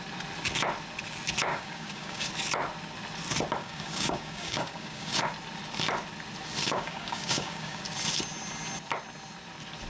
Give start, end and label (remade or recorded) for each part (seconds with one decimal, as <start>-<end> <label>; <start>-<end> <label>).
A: 0.0-1.5 recorded; 1.5-2.3 remade; 2.3-3.6 recorded; 3.6-5.2 remade; 5.2-6.6 recorded; 6.6-7.8 remade; 7.8-9.9 recorded